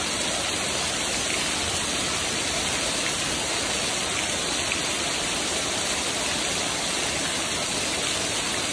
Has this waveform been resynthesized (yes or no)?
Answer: no